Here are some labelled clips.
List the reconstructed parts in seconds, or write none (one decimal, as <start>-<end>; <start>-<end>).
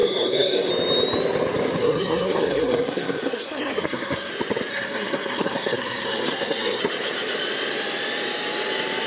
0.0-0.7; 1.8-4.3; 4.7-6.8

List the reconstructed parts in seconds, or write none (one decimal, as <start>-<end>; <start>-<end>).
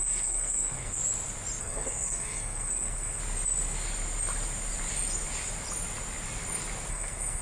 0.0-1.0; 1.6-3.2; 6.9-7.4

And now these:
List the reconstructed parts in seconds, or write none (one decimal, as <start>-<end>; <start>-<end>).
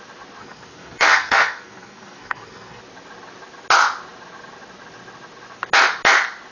0.4-2.8